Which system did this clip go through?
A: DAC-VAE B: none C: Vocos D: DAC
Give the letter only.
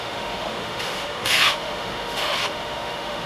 A